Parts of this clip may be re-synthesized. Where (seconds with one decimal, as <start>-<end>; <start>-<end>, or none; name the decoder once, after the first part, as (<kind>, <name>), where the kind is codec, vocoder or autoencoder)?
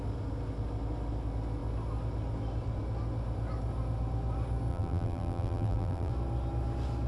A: 4.7-6.1 (vocoder, BigVGAN v2)